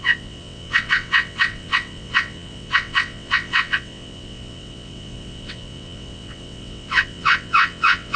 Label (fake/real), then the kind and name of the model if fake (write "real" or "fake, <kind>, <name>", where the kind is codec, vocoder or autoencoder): fake, vocoder, WaveNeXt